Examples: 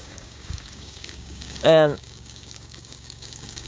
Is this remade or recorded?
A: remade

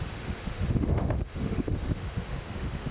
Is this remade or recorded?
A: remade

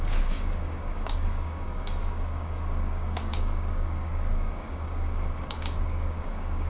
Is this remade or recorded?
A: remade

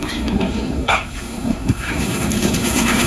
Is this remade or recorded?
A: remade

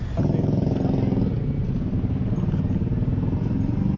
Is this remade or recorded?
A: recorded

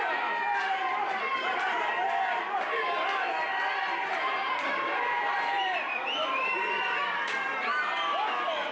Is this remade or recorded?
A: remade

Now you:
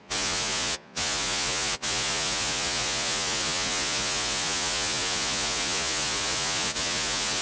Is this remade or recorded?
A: remade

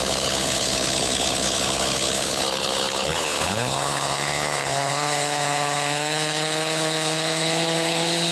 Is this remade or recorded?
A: remade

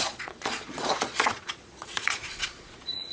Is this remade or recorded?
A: remade